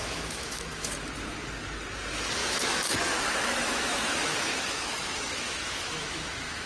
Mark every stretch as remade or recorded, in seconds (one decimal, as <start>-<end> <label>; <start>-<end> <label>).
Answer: 0.0-0.9 remade; 0.9-2.4 recorded; 2.4-6.7 remade